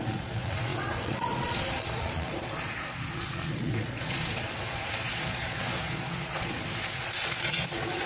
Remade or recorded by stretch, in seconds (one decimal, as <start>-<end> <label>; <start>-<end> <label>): 0.0-8.1 remade